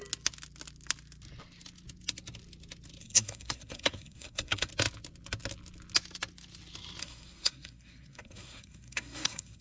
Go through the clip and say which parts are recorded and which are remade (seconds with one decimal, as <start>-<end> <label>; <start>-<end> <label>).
0.0-3.0 recorded; 3.0-4.7 remade; 4.7-7.0 recorded; 7.0-9.6 remade